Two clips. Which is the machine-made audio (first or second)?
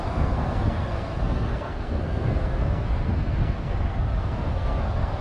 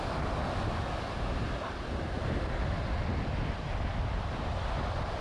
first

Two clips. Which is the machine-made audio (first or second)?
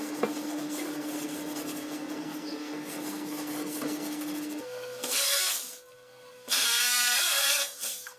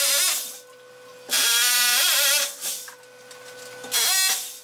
first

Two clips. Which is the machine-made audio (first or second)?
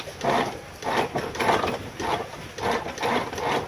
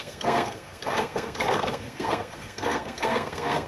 second